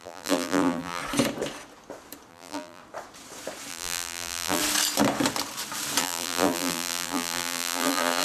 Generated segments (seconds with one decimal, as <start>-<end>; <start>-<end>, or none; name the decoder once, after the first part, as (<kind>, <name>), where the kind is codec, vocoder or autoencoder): 0.0-1.0 (vocoder, BigVGAN v2); 2.3-2.8; 3.7-4.6; 6.0-8.2